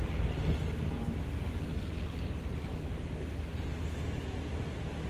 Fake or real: real